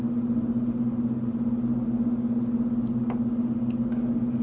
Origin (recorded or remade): recorded